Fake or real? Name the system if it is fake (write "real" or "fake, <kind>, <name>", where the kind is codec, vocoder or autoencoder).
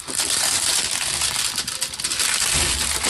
real